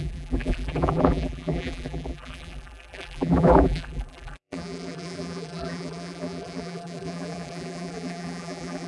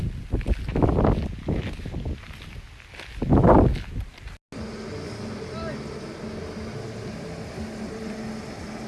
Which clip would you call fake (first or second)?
first